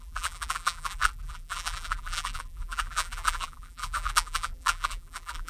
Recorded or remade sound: remade